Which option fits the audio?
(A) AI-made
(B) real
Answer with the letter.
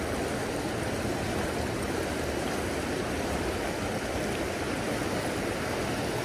A